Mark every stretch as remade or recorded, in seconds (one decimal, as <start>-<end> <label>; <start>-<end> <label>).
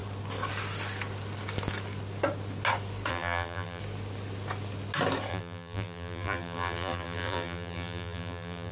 0.0-3.1 recorded; 3.1-3.8 remade; 3.8-5.3 recorded; 5.3-8.7 remade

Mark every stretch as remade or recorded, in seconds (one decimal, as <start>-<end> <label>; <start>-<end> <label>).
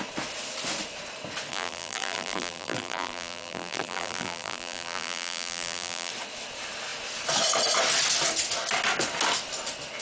0.0-1.5 recorded; 1.5-6.1 remade; 6.1-10.0 recorded